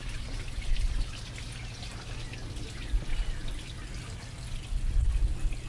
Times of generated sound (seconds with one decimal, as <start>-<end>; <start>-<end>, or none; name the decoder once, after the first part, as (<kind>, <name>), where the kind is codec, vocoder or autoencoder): none